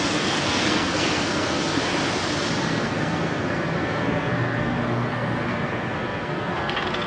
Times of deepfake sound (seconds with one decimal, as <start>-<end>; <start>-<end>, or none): 0.0-1.8; 2.6-7.1